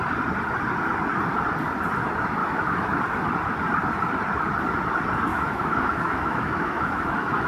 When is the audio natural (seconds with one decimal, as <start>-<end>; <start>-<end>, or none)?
0.0-2.4; 3.0-5.3